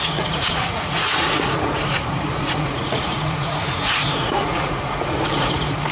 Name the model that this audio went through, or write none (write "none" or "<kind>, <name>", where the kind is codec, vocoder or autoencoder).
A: vocoder, Vocos